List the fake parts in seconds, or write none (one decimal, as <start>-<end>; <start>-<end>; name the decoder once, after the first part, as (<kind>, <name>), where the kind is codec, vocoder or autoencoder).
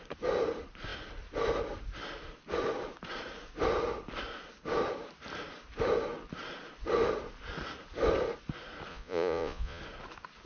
8.9-9.8 (vocoder, Vocos)